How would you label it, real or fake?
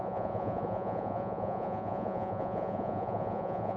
fake